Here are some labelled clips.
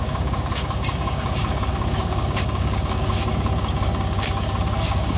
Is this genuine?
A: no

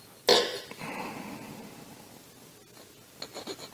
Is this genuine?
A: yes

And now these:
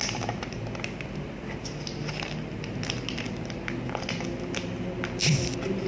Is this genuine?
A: yes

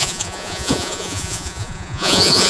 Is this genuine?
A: no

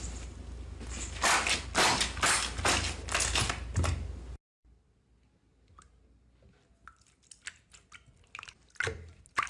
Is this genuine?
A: yes